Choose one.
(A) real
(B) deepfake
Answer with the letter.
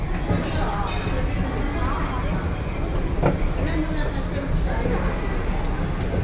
A